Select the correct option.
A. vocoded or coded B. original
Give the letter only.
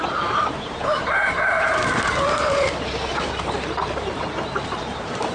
A